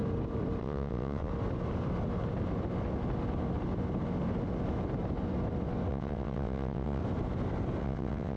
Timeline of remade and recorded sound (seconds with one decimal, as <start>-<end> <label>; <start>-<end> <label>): 0.0-0.6 recorded; 0.6-1.3 remade; 1.3-5.9 recorded; 5.9-7.0 remade; 7.0-7.8 recorded; 7.8-8.4 remade